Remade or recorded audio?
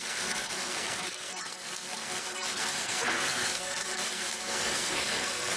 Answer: remade